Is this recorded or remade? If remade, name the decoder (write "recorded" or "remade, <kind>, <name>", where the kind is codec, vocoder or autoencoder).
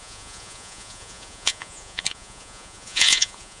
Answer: remade, vocoder, Vocos